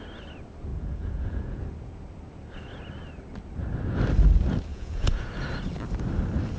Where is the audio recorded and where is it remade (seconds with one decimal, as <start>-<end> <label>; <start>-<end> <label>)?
0.0-0.7 recorded; 0.7-1.6 remade; 1.6-4.7 recorded; 4.7-5.3 remade; 5.3-6.6 recorded